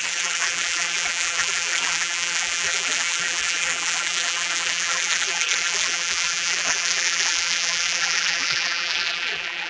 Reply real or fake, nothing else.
fake